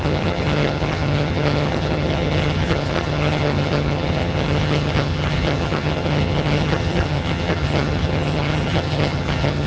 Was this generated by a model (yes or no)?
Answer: yes